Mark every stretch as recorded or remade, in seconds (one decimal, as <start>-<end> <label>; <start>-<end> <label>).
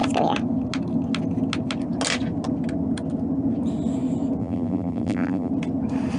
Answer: 0.0-4.4 recorded; 4.4-5.5 remade; 5.5-6.2 recorded